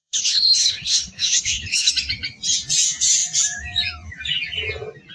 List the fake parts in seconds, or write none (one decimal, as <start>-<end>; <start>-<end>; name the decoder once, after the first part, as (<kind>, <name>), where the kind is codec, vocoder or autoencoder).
0.0-1.9 (codec, HILCodec)